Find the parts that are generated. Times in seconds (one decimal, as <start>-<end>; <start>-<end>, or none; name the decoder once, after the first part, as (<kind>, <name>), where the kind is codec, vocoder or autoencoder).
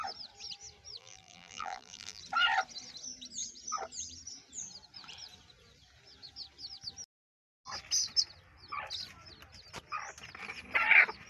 1.0-2.2 (vocoder, BigVGAN v2)